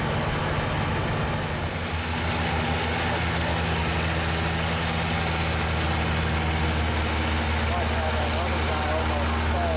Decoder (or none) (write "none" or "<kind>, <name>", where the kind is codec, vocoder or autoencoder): none